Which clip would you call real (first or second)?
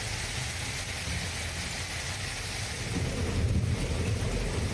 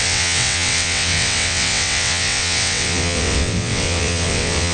first